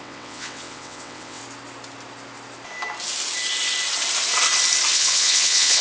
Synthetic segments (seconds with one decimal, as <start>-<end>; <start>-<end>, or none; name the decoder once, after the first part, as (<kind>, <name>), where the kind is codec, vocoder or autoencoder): 0.0-1.4 (vocoder, WaveNeXt); 4.9-5.8